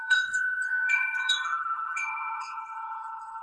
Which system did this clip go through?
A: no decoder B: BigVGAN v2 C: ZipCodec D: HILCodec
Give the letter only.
D